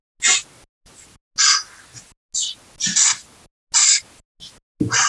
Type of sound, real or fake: real